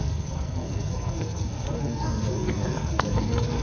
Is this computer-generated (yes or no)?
yes